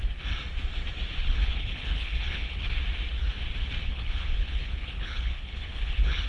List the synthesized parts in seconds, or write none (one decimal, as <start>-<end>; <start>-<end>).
1.2-2.6; 3.8-6.3